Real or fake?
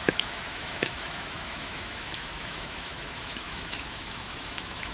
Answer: fake